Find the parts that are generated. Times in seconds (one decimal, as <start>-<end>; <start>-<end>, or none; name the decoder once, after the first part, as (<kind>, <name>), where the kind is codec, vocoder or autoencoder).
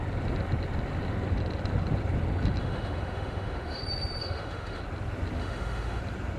2.6-3.8 (autoencoder, DAC-VAE); 4.2-4.8; 5.4-6.0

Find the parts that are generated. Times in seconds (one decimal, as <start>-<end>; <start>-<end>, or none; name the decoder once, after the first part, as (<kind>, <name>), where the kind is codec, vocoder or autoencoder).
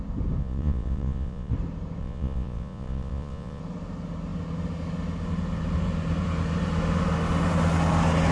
0.4-1.5 (vocoder, Vocos); 2.0-3.6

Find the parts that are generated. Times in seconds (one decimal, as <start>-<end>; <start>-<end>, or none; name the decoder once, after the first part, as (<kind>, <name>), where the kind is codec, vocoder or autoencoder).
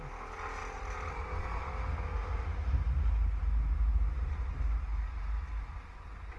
none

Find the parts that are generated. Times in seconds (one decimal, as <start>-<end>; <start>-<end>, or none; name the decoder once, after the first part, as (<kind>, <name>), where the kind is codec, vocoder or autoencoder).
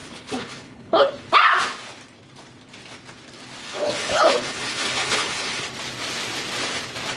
0.0-1.1 (codec, HILCodec); 3.6-5.6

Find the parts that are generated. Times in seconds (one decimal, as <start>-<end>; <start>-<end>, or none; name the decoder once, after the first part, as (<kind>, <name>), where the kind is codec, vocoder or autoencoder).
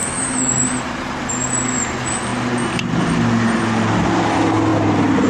0.0-0.5 (autoencoder, DAC-VAE)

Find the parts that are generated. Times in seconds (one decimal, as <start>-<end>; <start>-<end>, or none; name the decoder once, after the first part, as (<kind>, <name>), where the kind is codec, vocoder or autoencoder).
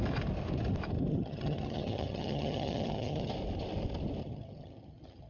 1.1-3.3 (vocoder, HiFi-GAN); 4.2-5.3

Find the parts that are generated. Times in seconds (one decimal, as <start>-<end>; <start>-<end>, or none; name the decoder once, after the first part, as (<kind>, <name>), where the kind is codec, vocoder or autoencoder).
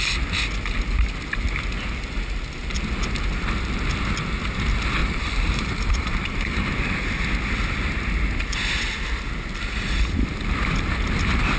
5.0-6.7 (vocoder, BigVGAN v2)